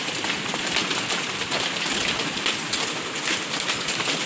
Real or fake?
real